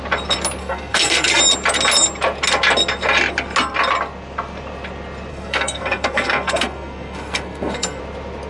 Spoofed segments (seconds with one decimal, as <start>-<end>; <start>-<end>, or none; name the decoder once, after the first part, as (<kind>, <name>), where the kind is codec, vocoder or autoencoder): 0.6-1.4 (codec, SNAC); 5.3-8.0